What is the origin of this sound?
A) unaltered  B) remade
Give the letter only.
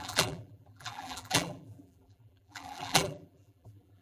B